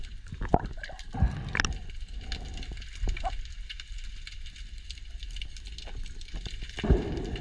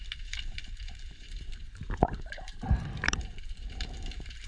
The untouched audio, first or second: first